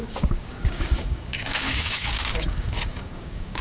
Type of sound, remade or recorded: remade